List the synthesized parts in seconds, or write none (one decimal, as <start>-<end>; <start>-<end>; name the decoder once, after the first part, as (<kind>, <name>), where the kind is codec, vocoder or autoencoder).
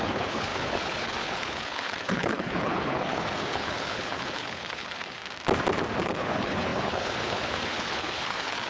0.0-5.2 (codec, HILCodec); 6.0-8.7